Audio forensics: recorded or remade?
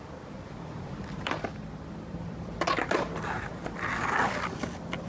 remade